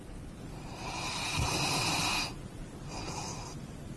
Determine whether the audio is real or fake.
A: real